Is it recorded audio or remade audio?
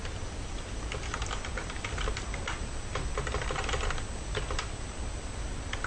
recorded